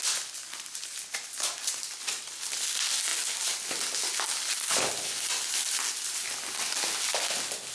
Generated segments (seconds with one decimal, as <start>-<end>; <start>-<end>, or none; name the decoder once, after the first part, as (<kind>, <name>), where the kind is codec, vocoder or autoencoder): 0.4-2.6 (vocoder, BigVGAN v2)